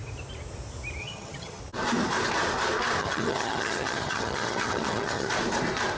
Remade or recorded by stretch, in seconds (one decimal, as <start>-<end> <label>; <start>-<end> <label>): 0.0-1.0 recorded; 1.0-1.6 remade; 1.6-3.0 recorded; 3.0-5.3 remade; 5.3-6.0 recorded